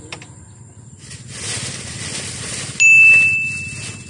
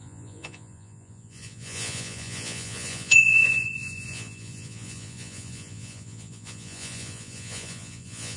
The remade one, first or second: second